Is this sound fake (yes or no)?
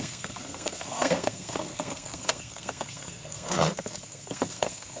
yes